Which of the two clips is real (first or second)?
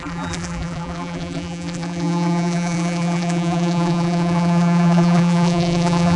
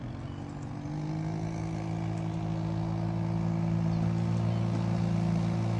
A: second